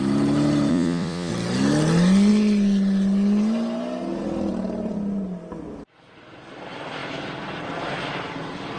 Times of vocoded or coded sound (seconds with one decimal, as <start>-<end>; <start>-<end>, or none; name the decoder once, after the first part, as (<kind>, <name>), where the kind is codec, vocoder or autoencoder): 0.7-1.3 (vocoder, Vocos)